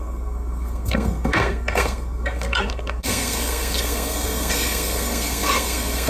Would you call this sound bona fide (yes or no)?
no